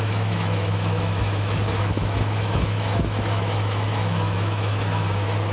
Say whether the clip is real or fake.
fake